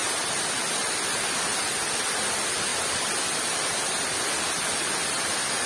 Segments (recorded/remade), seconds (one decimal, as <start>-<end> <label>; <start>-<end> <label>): 0.0-5.7 recorded